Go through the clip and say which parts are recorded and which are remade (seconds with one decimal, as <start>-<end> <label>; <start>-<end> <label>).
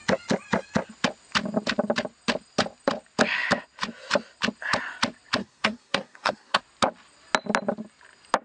0.0-5.4 recorded; 5.4-6.6 remade; 6.6-8.4 recorded